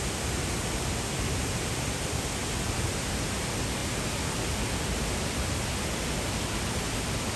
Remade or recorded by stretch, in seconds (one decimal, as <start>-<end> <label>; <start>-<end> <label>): 0.0-7.4 recorded